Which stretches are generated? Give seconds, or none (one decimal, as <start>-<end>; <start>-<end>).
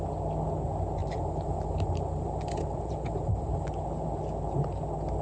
1.0-3.7